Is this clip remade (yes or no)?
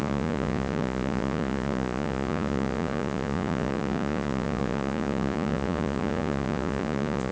yes